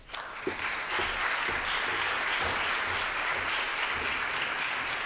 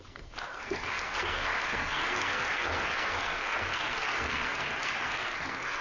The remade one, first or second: second